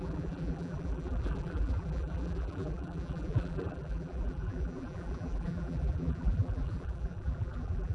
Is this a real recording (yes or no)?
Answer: no